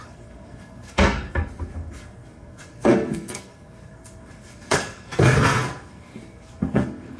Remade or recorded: remade